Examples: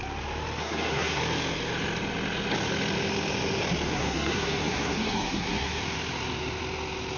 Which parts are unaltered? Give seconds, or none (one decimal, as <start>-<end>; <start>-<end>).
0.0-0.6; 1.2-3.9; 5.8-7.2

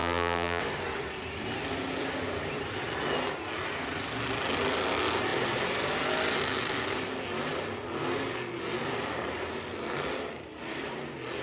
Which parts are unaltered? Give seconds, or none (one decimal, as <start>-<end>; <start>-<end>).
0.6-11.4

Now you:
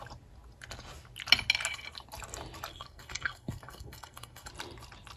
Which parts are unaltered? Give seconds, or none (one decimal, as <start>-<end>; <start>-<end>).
0.0-2.7; 4.5-5.2

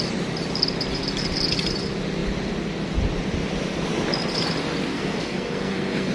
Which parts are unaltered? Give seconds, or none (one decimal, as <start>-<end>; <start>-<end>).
0.0-4.9